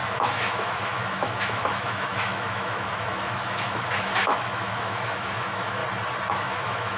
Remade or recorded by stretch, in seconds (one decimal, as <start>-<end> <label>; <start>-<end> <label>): 0.0-5.8 remade; 5.8-6.3 recorded; 6.3-7.0 remade